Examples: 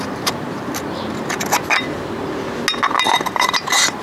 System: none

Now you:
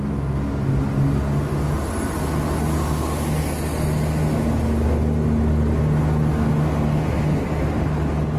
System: none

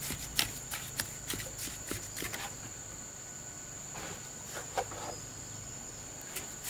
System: none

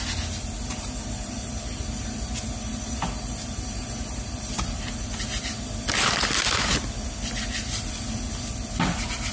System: none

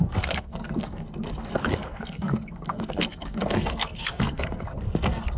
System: codec, SNAC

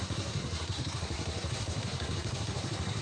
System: codec, SNAC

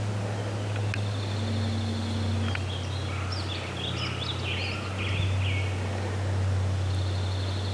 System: none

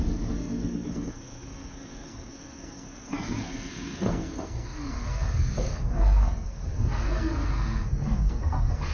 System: codec, SNAC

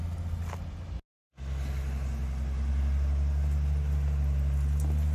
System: none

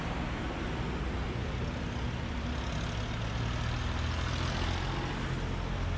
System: none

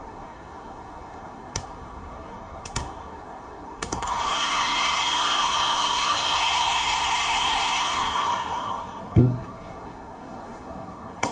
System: codec, SNAC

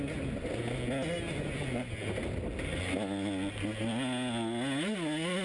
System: none